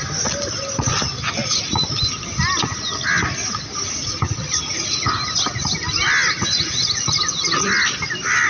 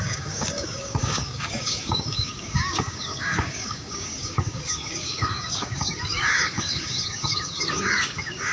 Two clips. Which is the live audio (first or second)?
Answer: first